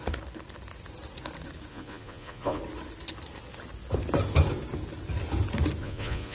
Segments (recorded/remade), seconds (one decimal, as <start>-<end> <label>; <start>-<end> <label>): 0.0-1.7 recorded; 1.7-2.6 remade; 2.6-5.8 recorded; 5.8-6.3 remade